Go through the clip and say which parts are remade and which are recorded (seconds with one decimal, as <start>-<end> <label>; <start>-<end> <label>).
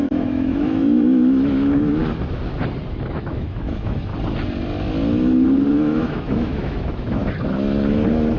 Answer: 0.0-2.0 remade; 2.0-3.1 recorded; 3.1-4.1 remade; 4.1-5.7 recorded; 5.7-7.2 remade; 7.2-8.4 recorded